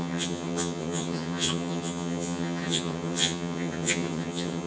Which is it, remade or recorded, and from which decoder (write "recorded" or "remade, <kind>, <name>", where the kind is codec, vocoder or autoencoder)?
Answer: remade, vocoder, HiFi-GAN